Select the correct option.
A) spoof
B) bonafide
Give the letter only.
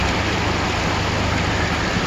B